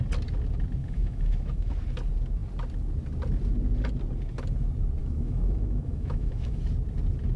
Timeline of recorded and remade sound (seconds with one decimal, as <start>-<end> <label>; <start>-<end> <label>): 0.0-0.8 recorded; 0.8-1.7 remade; 1.7-5.0 recorded; 5.0-6.6 remade; 6.6-7.4 recorded